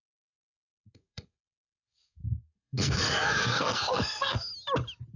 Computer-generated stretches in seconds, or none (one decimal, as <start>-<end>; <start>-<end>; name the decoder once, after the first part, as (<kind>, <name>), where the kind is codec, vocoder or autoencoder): 0.0-4.5 (codec, SNAC)